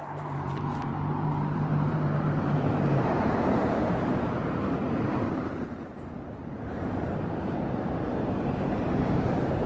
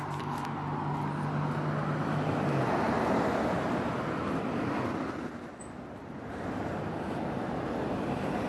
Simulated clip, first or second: first